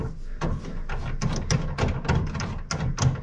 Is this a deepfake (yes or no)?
no